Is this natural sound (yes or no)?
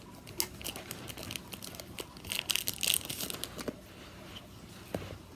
yes